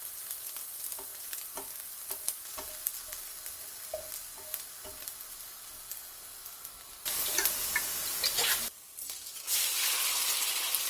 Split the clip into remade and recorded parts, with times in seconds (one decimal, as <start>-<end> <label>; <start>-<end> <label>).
0.0-10.9 recorded